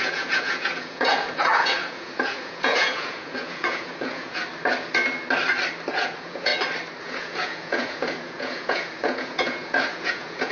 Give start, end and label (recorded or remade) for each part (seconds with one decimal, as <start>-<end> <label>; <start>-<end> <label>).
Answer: 0.0-4.4 remade; 4.4-5.9 recorded; 5.9-6.5 remade; 6.5-7.0 recorded; 7.0-10.5 remade